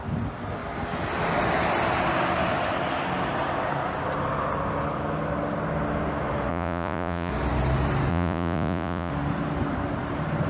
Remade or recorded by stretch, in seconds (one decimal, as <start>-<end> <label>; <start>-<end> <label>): 0.0-6.5 recorded; 6.5-7.3 remade; 7.3-8.1 recorded; 8.1-9.1 remade; 9.1-10.5 recorded